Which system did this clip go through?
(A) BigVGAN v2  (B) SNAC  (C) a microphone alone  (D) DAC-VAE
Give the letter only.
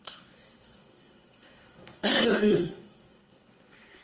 B